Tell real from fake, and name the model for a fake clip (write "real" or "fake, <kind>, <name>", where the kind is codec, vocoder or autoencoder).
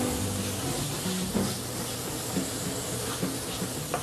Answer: real